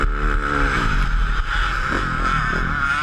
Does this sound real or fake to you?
real